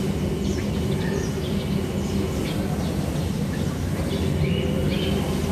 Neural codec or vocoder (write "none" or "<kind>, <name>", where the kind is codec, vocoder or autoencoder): none